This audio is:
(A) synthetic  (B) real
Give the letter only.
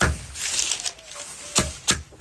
B